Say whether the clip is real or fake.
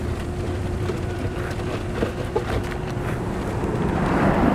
fake